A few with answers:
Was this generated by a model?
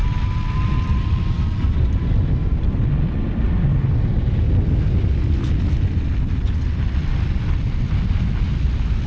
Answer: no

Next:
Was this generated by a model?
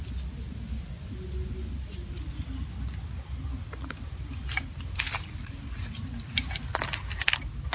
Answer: no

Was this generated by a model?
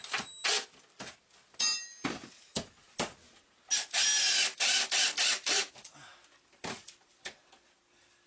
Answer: no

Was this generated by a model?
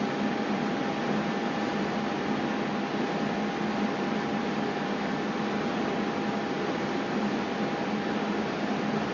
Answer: no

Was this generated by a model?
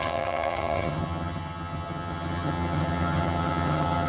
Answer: yes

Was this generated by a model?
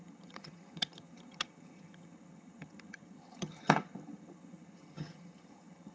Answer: yes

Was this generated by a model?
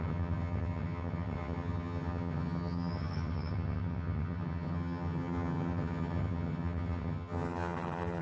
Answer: yes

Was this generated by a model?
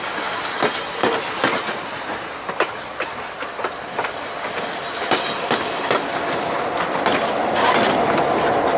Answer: no